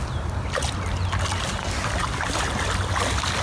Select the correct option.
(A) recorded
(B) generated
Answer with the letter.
A